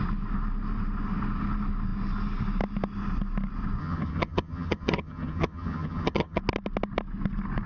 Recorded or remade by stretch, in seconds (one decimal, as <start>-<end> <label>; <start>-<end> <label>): 0.0-3.8 recorded; 3.8-6.4 remade; 6.4-7.7 recorded